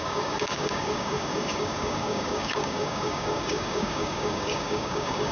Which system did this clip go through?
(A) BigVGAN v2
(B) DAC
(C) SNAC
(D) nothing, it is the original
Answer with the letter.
B